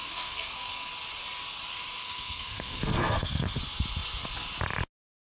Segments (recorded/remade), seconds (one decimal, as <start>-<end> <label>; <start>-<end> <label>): 0.0-0.9 remade; 0.9-2.0 recorded; 2.0-3.6 remade; 3.6-5.4 recorded